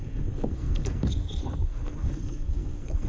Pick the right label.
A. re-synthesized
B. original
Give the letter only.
A